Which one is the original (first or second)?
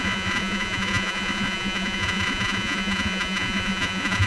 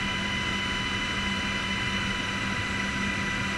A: second